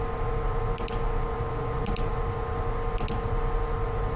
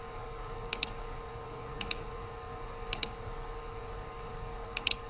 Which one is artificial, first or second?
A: second